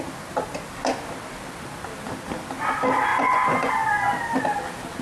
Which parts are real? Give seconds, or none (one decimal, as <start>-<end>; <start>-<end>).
0.0-3.1; 3.7-5.0